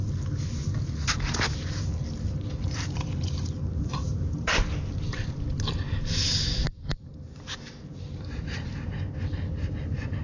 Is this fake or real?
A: real